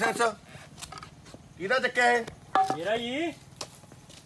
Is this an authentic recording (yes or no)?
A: yes